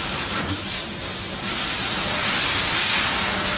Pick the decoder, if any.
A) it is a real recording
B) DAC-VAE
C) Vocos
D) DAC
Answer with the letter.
A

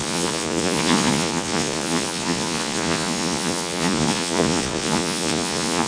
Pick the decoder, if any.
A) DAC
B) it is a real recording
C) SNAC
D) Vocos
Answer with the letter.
D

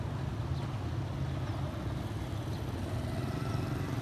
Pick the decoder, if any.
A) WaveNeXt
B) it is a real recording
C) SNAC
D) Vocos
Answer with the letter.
B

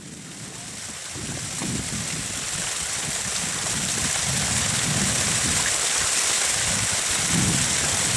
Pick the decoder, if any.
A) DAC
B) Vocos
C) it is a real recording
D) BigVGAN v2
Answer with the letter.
C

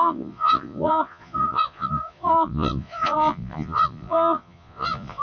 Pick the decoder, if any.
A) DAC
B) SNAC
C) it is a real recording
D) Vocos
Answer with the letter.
D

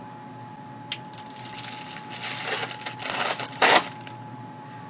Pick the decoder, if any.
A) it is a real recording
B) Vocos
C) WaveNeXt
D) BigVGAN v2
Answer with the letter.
A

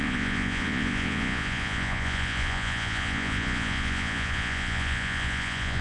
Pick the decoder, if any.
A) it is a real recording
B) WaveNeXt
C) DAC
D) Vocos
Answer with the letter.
D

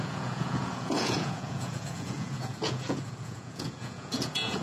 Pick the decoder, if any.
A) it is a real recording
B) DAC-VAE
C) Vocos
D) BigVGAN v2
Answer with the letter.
C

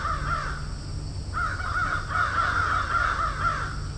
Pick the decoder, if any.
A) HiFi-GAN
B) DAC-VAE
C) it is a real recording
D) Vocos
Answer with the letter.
C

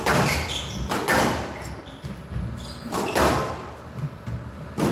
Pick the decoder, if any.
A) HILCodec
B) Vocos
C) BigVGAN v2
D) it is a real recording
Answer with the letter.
D